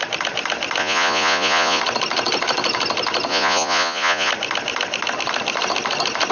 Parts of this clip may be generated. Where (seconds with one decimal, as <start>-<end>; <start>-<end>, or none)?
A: 0.8-1.8; 3.3-4.3